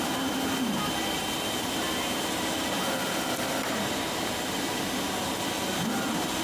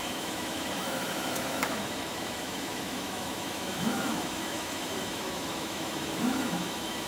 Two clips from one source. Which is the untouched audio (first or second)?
first